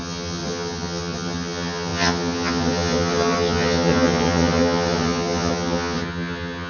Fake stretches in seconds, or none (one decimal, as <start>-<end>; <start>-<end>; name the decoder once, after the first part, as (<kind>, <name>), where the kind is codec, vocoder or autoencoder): 0.0-6.7 (vocoder, HiFi-GAN)